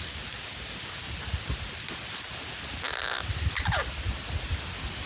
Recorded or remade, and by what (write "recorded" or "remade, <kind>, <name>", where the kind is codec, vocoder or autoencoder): recorded